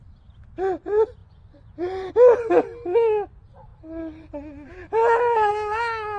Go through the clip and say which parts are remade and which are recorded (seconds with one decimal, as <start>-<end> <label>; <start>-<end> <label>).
0.0-1.2 recorded; 1.2-2.1 remade; 2.1-4.8 recorded; 4.8-5.5 remade; 5.5-6.2 recorded